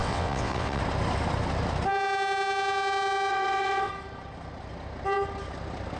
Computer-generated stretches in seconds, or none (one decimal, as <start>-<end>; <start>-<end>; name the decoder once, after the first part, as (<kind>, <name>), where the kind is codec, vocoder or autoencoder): 0.0-0.8 (vocoder, WaveNeXt); 3.3-3.9